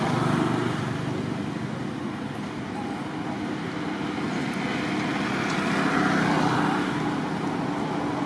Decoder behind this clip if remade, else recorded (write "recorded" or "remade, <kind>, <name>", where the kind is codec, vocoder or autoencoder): recorded